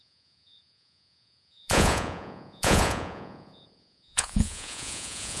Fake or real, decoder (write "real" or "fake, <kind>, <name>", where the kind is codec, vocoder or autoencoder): fake, vocoder, Vocos